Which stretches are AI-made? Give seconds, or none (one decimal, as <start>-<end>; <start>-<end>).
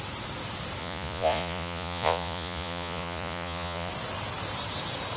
0.8-3.9